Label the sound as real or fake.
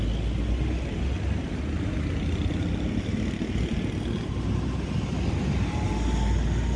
real